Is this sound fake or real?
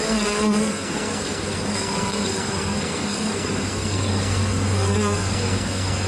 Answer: fake